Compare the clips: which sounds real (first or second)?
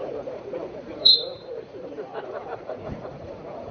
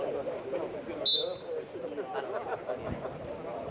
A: second